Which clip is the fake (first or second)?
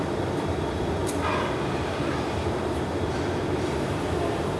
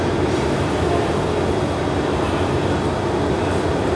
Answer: first